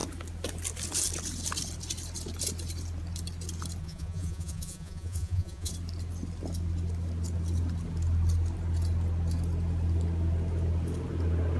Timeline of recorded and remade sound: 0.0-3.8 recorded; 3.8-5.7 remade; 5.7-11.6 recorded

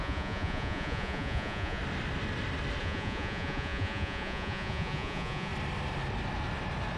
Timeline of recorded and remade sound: 0.0-1.8 remade; 1.8-2.8 recorded; 2.8-5.5 remade; 5.5-7.0 recorded

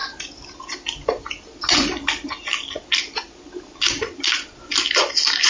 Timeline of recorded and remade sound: 0.0-5.5 recorded

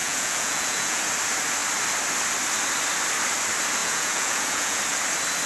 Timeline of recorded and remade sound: 0.0-1.0 remade; 1.0-3.8 recorded; 3.8-4.8 remade; 4.8-5.5 recorded

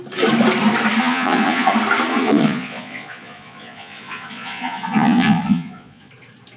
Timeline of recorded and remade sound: 0.0-1.0 recorded; 1.0-1.7 remade; 1.7-2.1 recorded; 2.1-6.1 remade; 6.1-6.6 recorded

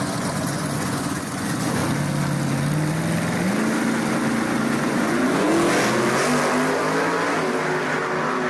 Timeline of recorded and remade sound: 0.0-1.8 remade; 1.8-4.8 recorded; 4.8-5.5 remade; 5.5-8.5 recorded